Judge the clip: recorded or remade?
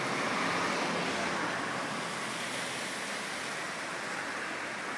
recorded